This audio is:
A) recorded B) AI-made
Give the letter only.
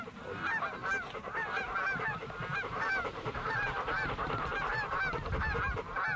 B